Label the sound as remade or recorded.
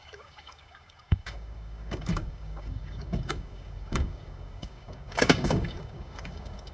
remade